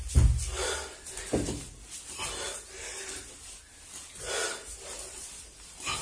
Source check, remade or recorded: recorded